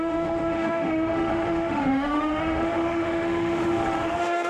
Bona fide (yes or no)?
no